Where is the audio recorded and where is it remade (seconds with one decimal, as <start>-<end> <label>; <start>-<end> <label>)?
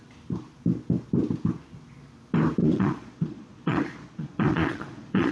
0.0-2.6 recorded; 2.6-5.3 remade